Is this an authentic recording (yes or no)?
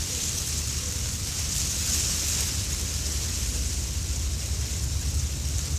yes